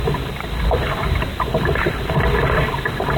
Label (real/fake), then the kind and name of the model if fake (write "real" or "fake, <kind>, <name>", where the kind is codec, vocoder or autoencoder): real